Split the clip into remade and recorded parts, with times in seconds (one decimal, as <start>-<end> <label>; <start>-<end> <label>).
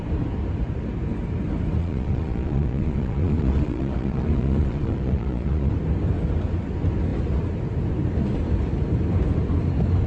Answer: 0.0-1.8 recorded; 1.8-5.7 remade; 5.7-10.1 recorded